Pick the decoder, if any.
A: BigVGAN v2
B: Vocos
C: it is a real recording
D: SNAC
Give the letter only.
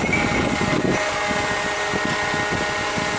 C